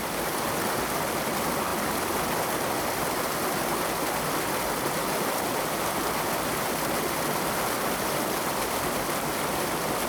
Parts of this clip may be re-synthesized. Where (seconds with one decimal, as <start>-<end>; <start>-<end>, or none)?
none

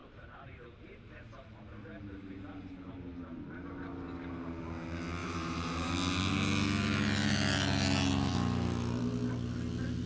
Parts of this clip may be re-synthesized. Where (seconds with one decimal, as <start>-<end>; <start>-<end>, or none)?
0.0-1.3; 5.2-5.9

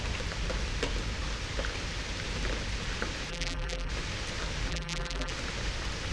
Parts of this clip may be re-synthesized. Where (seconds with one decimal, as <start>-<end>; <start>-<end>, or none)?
3.3-3.9; 4.7-5.3

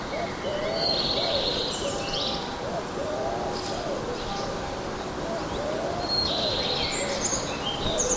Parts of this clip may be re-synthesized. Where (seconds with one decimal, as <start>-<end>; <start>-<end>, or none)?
1.2-1.8

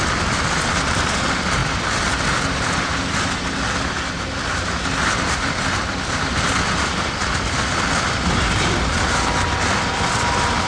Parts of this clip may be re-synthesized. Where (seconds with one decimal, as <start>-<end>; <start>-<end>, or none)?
none

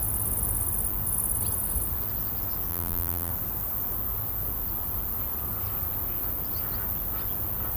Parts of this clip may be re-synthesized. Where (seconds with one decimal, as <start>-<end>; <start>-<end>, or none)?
2.7-3.3